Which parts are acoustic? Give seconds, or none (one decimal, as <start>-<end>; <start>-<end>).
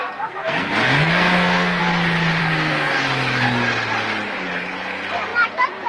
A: 1.8-2.4; 3.0-5.9